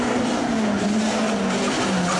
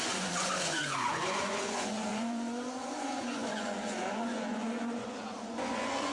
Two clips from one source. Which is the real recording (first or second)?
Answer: first